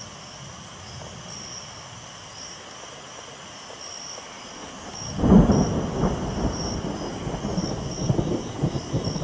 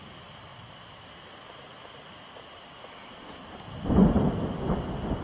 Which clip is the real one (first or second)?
first